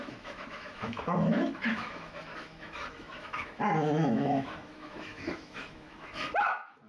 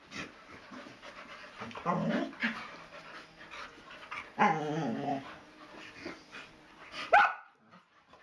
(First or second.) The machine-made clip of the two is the first